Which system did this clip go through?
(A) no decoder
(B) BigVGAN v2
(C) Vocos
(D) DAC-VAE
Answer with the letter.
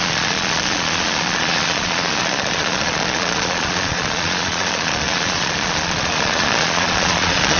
C